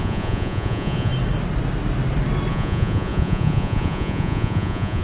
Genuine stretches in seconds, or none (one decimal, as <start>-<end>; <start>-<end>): 1.1-2.5